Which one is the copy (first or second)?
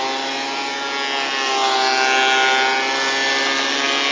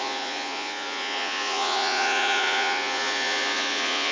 second